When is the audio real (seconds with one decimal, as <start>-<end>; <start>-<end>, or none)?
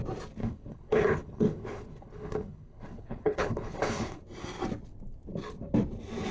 0.0-0.4; 4.2-6.3